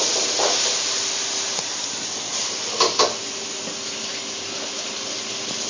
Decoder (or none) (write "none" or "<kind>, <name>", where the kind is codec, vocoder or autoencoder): none